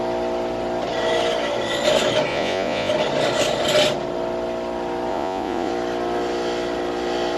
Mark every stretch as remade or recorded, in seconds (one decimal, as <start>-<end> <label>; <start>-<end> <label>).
0.0-2.3 recorded; 2.3-2.9 remade; 2.9-5.1 recorded; 5.1-5.7 remade; 5.7-7.4 recorded